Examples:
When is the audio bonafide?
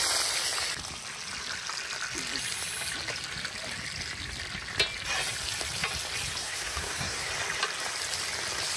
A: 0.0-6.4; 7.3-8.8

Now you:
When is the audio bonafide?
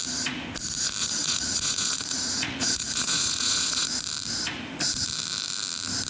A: 0.0-1.0; 4.0-6.1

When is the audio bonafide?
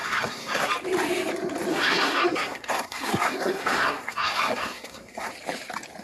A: 0.7-1.7; 5.3-6.0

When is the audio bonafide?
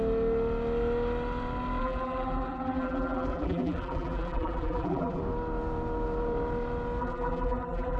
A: 0.0-1.8; 5.2-7.0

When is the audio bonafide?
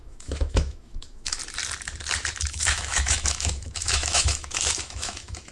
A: 1.4-2.4